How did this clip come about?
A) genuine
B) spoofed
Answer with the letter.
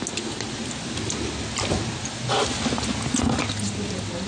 A